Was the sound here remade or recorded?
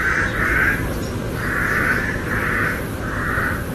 remade